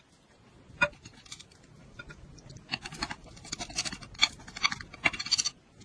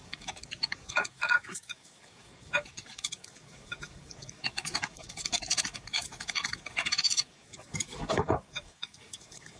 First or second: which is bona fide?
first